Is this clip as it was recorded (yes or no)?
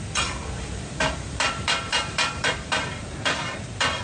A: no